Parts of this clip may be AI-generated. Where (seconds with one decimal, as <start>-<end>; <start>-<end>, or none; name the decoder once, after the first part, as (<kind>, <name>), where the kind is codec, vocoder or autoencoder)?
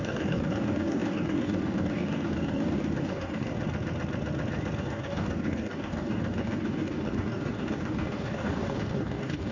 0.0-3.5 (codec, DAC); 4.8-9.5